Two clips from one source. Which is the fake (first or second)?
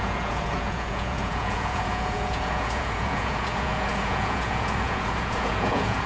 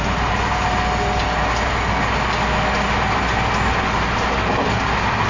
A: first